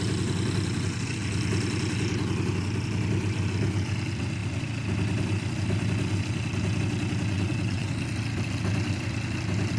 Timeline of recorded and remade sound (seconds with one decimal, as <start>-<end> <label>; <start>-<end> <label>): 0.0-7.3 recorded; 7.3-7.9 remade; 7.9-9.8 recorded